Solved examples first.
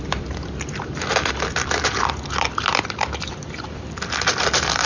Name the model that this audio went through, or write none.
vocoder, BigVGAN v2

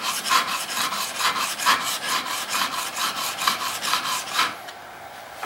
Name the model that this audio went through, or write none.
vocoder, BigVGAN v2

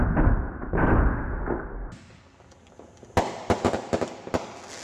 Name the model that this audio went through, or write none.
none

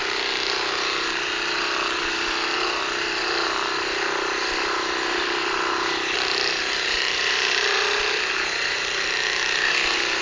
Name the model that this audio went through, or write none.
vocoder, BigVGAN v2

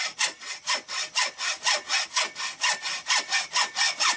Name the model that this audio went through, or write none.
none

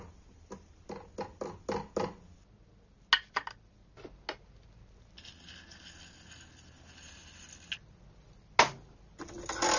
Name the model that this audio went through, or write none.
none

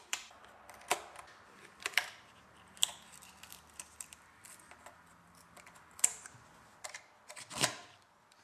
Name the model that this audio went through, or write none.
vocoder, BigVGAN v2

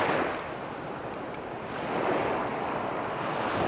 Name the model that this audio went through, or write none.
vocoder, BigVGAN v2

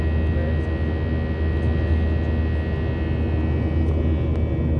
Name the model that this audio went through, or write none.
none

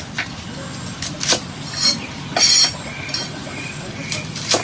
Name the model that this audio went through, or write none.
vocoder, BigVGAN v2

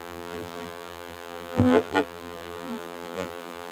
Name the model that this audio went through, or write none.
vocoder, BigVGAN v2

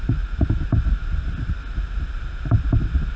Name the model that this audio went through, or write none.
none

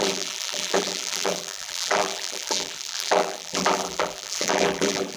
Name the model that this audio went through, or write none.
vocoder, BigVGAN v2